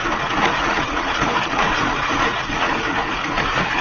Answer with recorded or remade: remade